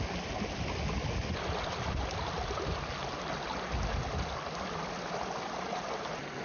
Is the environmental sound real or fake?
real